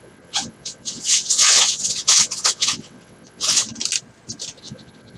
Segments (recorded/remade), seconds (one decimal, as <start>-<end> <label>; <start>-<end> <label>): 0.0-3.6 remade; 3.6-4.6 recorded; 4.6-5.2 remade